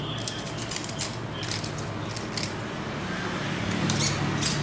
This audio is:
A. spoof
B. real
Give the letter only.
B